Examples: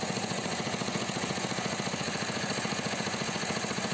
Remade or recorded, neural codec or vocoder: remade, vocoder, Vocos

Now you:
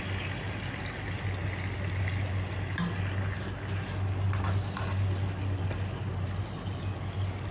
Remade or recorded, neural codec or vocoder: recorded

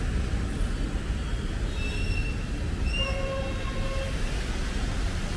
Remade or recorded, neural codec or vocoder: recorded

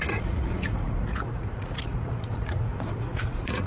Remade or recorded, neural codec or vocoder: remade, vocoder, Vocos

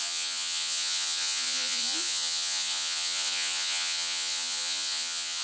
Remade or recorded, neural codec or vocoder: remade, vocoder, Vocos